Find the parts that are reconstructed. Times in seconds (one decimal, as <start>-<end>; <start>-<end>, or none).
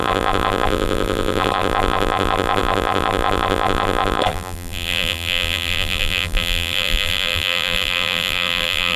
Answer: 0.0-9.0